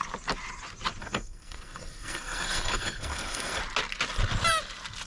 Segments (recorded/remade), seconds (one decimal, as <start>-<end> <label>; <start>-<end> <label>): 0.0-1.0 recorded; 1.0-3.6 remade; 3.6-5.1 recorded